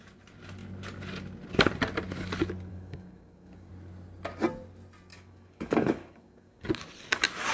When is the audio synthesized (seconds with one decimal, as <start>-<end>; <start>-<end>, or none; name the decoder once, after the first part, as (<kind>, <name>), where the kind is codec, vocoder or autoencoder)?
2.7-3.7 (codec, DAC); 5.1-6.7

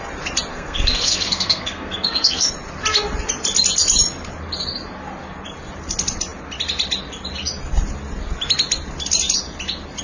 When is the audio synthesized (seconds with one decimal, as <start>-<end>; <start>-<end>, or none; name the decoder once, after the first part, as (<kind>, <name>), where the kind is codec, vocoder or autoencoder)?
0.5-2.5 (codec, SNAC)